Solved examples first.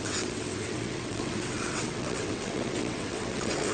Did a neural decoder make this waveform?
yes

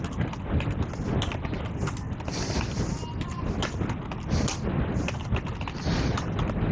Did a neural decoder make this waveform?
no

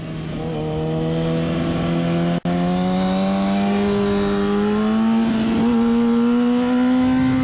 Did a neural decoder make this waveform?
no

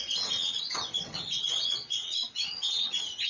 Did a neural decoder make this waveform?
yes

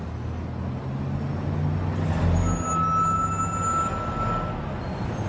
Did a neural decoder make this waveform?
no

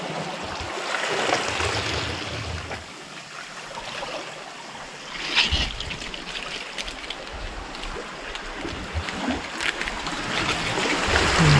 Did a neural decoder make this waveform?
no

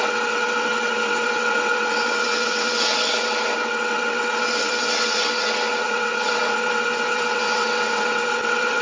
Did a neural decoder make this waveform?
yes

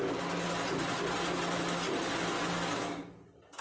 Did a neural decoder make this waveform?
no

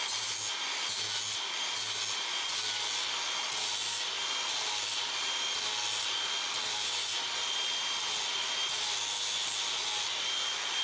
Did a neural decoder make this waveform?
no